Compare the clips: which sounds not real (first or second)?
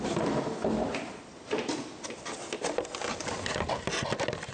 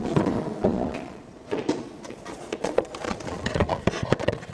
second